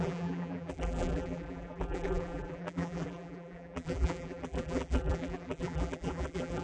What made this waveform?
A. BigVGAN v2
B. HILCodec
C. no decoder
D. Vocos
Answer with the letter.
A